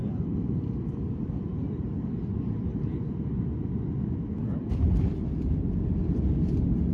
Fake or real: real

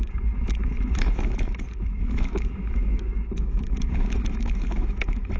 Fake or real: fake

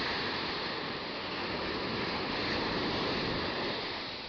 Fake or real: real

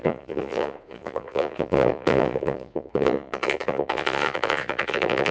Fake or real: fake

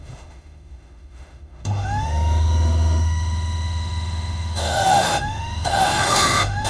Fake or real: fake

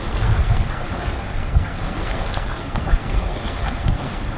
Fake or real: fake